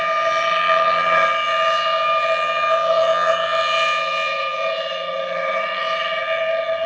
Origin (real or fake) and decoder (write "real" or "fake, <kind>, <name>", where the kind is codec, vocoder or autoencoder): fake, vocoder, HiFi-GAN